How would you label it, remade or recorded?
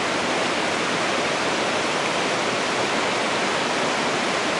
recorded